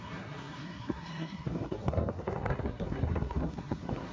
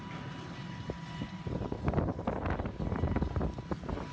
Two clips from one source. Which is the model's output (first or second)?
first